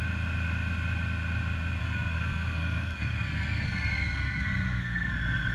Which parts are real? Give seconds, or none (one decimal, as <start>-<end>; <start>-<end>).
0.0-1.8; 5.1-5.5